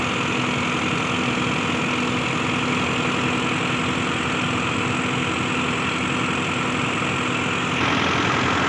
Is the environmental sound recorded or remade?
recorded